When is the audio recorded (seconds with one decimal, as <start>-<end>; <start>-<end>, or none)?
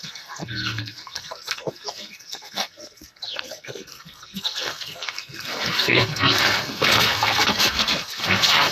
none